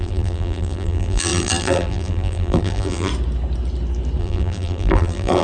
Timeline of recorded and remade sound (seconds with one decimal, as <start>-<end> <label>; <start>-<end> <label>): 0.0-3.1 remade; 3.1-4.2 recorded; 4.2-5.4 remade